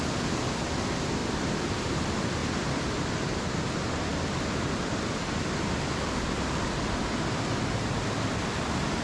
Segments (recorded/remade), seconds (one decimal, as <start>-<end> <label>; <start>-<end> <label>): 0.0-1.2 recorded; 1.2-1.9 remade; 1.9-9.0 recorded